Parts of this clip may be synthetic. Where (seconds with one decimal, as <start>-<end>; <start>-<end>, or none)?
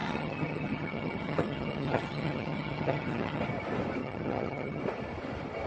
0.0-3.4; 4.0-4.8